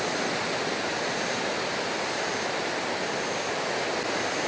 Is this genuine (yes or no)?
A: yes